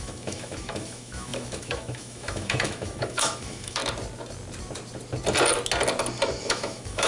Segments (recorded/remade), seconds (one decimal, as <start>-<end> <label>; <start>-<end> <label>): 0.0-3.8 remade; 3.8-6.4 recorded; 6.4-7.1 remade